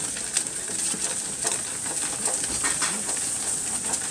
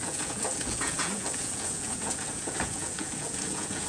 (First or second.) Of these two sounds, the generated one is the second